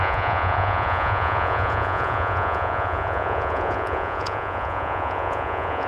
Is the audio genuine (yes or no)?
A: no